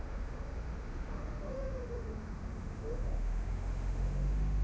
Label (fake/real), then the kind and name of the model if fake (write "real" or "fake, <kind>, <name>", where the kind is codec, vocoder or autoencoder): fake, autoencoder, DAC-VAE